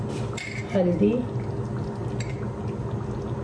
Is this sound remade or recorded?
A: recorded